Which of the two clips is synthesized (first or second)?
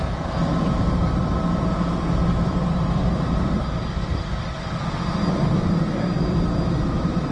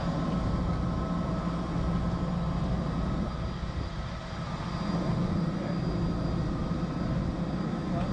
first